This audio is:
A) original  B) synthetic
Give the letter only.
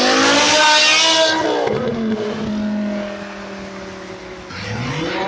A